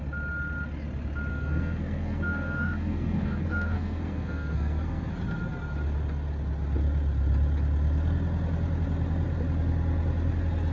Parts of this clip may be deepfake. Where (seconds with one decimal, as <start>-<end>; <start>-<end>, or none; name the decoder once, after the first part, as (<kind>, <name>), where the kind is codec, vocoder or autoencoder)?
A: 1.3-5.1 (codec, SNAC)